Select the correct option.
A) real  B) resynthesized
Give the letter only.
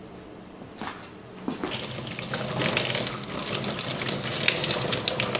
A